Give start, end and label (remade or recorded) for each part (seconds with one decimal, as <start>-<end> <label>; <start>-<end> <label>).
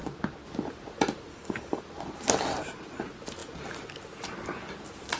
0.0-1.3 recorded; 1.3-1.8 remade; 1.8-5.2 recorded